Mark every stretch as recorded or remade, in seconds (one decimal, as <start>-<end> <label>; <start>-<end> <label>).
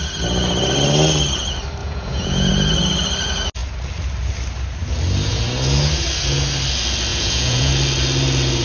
0.0-1.8 recorded; 1.8-2.5 remade; 2.5-7.1 recorded; 7.1-7.7 remade; 7.7-8.6 recorded